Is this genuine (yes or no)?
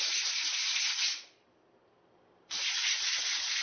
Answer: yes